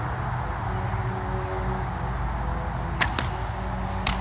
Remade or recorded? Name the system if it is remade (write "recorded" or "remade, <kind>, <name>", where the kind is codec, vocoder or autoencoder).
recorded